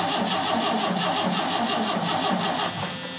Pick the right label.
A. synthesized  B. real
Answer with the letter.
B